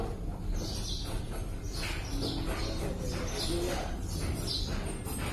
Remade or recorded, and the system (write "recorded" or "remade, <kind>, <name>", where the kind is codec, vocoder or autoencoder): recorded